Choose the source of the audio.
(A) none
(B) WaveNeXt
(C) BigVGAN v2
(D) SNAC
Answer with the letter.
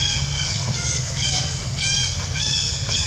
D